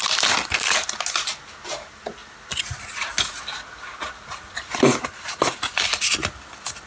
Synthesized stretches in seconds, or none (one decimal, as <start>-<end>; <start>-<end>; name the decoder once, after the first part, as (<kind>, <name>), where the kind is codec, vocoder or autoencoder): none